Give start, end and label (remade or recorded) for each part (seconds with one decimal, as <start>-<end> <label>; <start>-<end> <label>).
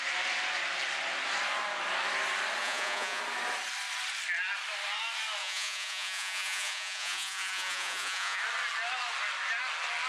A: 0.0-2.6 recorded; 2.6-3.2 remade; 3.2-5.4 recorded; 5.4-8.4 remade; 8.4-10.1 recorded